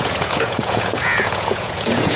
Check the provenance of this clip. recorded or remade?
remade